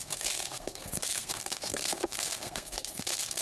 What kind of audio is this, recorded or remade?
remade